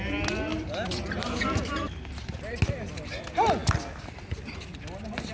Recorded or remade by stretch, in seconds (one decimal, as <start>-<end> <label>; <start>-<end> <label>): 0.0-5.3 recorded